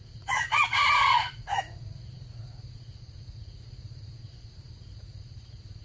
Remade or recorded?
remade